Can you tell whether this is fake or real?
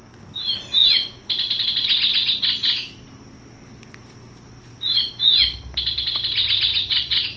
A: real